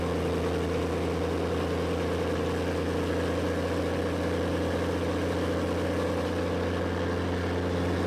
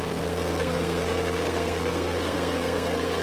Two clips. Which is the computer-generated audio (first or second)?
second